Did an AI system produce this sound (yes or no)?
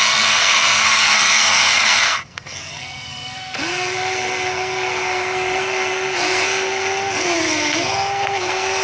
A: yes